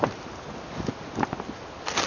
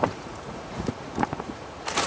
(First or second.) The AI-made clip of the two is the second